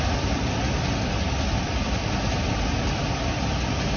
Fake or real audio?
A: real